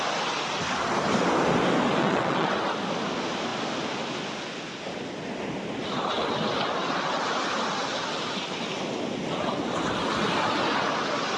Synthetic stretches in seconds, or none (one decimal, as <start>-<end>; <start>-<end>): 2.0-2.5